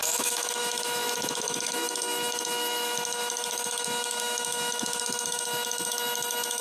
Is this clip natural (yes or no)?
no